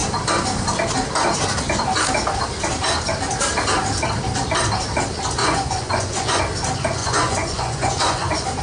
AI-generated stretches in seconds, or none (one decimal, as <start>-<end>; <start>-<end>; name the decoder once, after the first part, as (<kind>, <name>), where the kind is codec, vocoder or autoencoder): 5.4-6.4 (vocoder, Vocos); 7.0-8.6